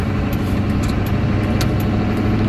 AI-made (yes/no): no